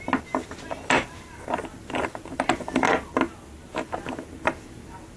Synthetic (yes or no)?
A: no